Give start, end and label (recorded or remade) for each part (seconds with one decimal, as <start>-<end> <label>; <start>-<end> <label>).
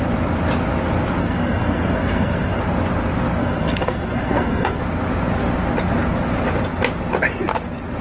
0.0-1.2 recorded; 1.2-2.6 remade; 2.6-3.4 recorded; 3.4-4.8 remade; 4.8-8.0 recorded